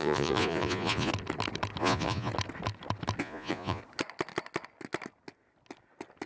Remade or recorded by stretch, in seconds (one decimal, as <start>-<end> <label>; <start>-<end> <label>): 0.0-1.1 remade; 1.1-1.8 recorded; 1.8-2.3 remade; 2.3-3.2 recorded; 3.2-3.8 remade; 3.8-6.3 recorded